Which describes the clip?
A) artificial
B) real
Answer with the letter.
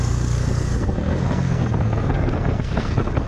A